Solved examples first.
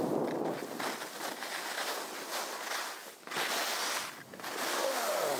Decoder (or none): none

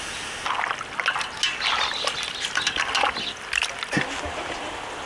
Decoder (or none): none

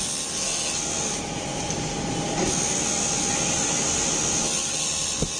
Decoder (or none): none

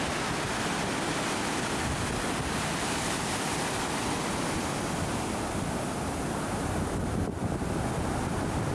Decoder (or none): none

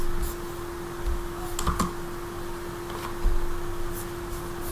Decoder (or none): none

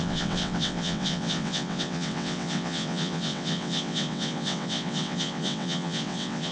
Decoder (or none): vocoder, WaveNeXt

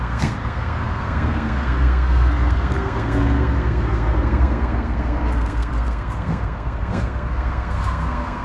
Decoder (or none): codec, SNAC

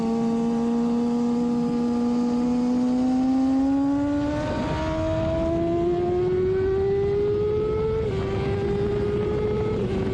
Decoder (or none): none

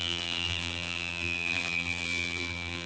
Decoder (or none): vocoder, BigVGAN v2